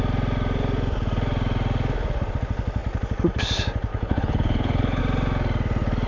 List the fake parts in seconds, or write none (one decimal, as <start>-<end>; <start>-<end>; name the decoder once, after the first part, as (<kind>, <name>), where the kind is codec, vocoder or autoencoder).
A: 3.9-5.0 (codec, HILCodec)